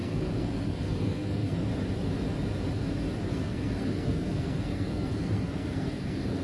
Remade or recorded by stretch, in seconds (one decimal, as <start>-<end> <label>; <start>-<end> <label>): 0.0-1.7 remade; 1.7-3.2 recorded; 3.2-6.4 remade